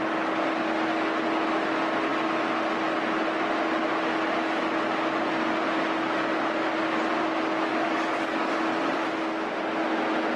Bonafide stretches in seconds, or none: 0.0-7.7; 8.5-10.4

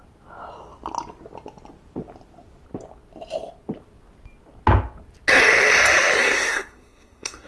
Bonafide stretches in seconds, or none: 0.0-6.2

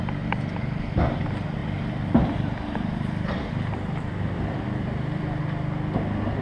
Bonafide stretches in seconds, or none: 0.0-1.6; 5.4-6.4

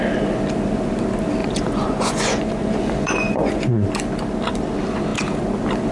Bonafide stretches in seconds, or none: 0.0-1.4; 3.9-5.9

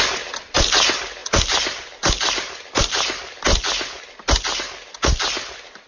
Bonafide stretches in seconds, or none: 0.0-5.9

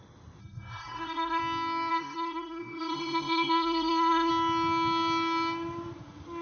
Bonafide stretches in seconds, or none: 0.0-0.4; 1.4-1.9; 4.3-6.4